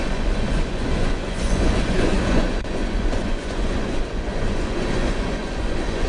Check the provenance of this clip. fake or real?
fake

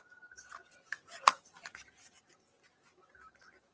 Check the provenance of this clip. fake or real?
real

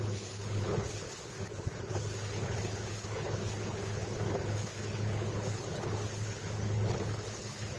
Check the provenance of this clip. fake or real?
fake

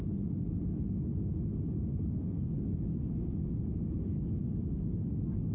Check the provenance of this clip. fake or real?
real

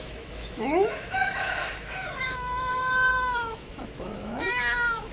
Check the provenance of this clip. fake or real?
fake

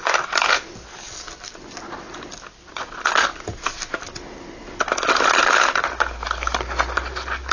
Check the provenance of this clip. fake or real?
real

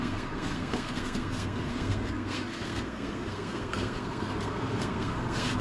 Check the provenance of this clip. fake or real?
fake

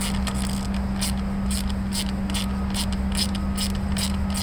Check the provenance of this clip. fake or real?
real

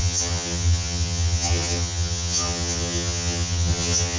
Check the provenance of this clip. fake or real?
fake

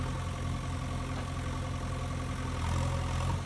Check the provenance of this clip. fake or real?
real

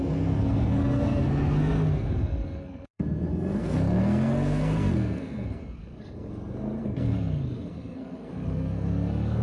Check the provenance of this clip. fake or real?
fake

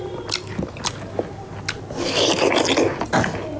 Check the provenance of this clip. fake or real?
real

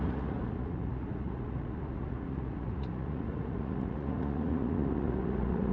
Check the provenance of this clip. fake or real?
fake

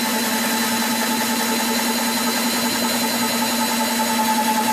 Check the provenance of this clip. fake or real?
real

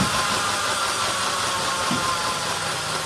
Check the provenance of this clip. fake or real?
real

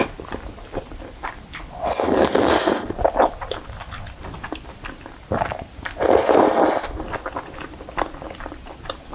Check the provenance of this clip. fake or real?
real